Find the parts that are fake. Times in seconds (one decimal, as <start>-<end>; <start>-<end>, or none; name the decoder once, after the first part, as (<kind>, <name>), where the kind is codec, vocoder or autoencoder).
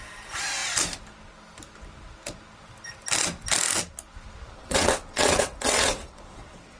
4.6-6.8 (vocoder, WaveNeXt)